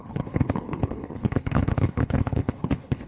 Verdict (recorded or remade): remade